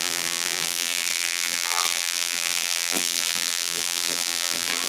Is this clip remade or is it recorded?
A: remade